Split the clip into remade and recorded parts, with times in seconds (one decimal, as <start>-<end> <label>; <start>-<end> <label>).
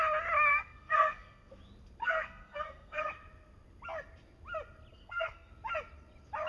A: 0.0-0.5 recorded; 0.5-1.5 remade; 1.5-2.0 recorded; 2.0-3.1 remade; 3.1-4.9 recorded; 4.9-5.5 remade; 5.5-6.5 recorded